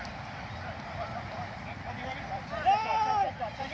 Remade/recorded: remade